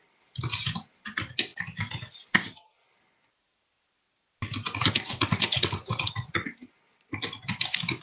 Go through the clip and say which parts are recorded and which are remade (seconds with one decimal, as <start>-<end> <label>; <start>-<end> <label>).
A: 0.0-8.0 recorded